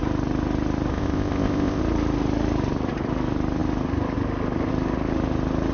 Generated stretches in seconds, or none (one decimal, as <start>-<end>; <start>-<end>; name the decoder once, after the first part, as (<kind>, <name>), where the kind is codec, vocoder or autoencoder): 0.9-1.8 (codec, ZipCodec)